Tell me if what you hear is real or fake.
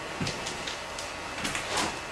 real